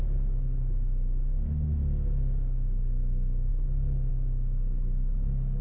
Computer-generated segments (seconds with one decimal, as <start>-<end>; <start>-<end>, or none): none